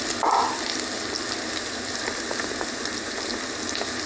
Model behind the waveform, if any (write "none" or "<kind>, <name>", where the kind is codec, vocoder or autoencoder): none